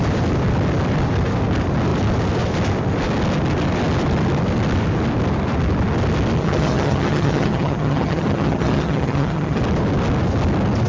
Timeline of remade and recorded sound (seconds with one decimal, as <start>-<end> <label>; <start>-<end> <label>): 0.0-6.4 recorded; 6.4-9.6 remade; 9.6-10.9 recorded